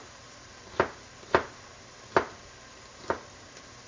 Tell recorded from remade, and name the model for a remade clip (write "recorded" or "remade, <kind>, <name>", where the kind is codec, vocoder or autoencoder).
recorded